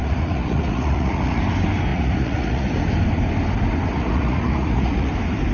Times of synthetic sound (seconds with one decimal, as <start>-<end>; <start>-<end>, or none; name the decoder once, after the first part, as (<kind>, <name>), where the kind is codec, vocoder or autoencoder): 0.0-1.4 (vocoder, Vocos); 1.9-2.7; 3.9-5.1